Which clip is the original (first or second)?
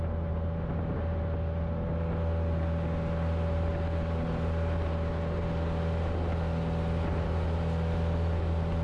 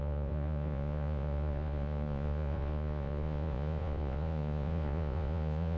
first